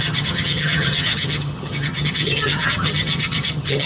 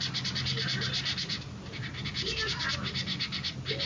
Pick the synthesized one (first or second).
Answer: first